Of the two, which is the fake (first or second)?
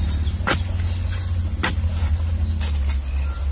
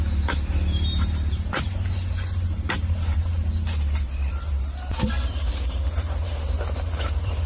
second